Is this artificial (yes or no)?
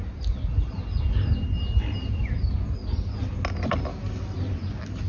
no